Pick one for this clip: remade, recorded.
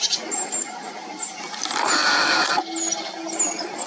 recorded